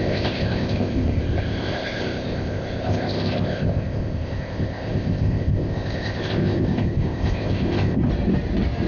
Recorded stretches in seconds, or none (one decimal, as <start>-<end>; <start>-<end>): 8.1-8.9